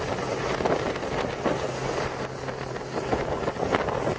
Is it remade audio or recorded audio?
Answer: recorded